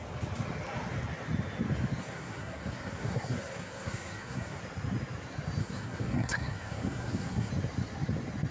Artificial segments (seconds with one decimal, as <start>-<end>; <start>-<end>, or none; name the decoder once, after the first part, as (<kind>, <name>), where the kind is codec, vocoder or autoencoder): 2.0-4.6 (codec, SNAC); 5.6-7.5